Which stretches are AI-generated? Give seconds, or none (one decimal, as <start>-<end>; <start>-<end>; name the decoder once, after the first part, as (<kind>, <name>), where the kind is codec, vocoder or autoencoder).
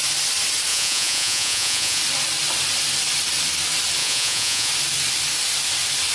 0.7-2.0 (vocoder, Vocos); 4.0-4.7